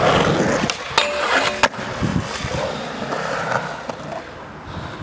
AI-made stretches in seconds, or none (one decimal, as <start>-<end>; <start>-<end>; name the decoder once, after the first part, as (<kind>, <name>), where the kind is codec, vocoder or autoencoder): 2.1-3.4 (vocoder, BigVGAN v2)